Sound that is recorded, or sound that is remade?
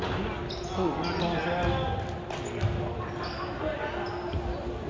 recorded